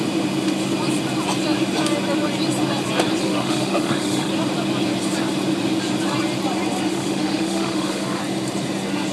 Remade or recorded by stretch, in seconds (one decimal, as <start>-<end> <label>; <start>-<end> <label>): 0.0-3.2 recorded; 3.2-4.3 remade; 4.3-6.9 recorded; 6.9-8.2 remade; 8.2-9.1 recorded